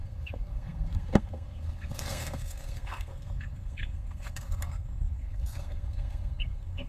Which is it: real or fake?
fake